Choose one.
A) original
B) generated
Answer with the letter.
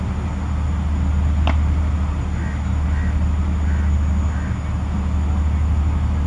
A